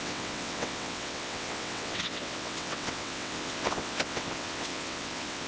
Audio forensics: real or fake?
fake